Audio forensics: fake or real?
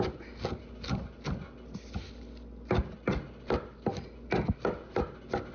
real